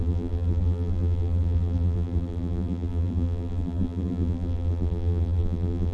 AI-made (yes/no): yes